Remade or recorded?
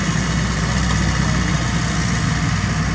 recorded